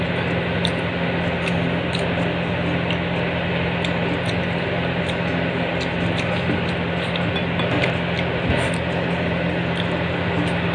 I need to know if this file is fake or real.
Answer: real